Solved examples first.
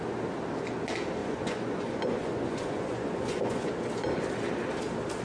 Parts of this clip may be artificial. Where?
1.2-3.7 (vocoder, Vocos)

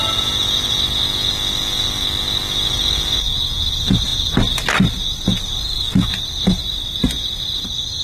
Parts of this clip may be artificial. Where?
none

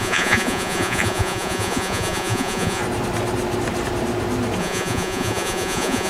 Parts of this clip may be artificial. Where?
0.0-2.8 (vocoder, Vocos); 4.6-6.1

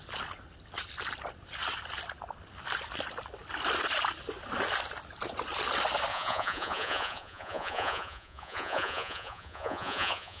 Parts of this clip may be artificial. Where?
6.1-10.4 (vocoder, Vocos)